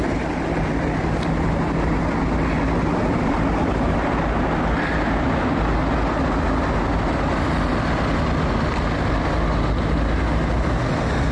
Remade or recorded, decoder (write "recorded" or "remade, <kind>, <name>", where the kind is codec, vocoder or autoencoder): recorded